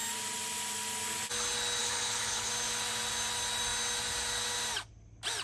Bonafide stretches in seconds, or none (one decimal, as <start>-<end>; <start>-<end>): 0.0-1.8; 2.5-5.4